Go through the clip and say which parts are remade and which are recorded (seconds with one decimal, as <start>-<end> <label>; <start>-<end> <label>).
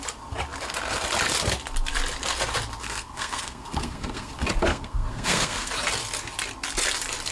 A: 0.0-2.8 recorded; 2.8-4.3 remade; 4.3-4.7 recorded; 4.7-5.7 remade; 5.7-7.3 recorded